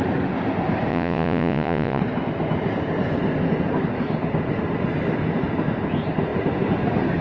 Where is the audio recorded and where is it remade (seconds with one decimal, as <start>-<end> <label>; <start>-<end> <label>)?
0.0-0.9 recorded; 0.9-2.0 remade; 2.0-7.2 recorded